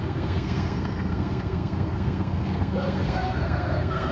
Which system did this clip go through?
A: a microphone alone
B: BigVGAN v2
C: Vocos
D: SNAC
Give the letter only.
D